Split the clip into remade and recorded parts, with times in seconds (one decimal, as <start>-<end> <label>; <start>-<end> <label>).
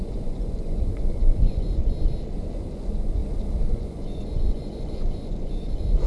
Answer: 0.0-1.8 remade; 1.8-2.5 recorded; 2.5-3.2 remade; 3.2-3.7 recorded; 3.7-6.1 remade